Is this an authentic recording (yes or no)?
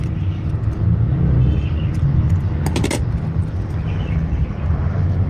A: yes